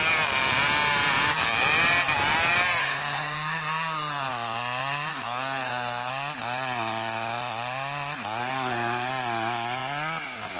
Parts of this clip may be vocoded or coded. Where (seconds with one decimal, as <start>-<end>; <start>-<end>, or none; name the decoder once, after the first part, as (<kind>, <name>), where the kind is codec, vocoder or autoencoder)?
2.8-4.3 (codec, SNAC); 5.1-6.1; 8.4-9.1